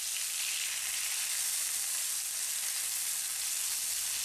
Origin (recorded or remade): recorded